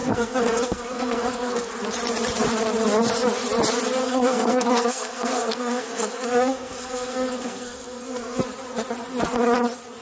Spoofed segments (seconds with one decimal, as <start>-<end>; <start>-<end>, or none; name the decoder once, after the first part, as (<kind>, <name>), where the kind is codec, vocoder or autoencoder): 0.0-1.7 (codec, SNAC); 4.0-8.4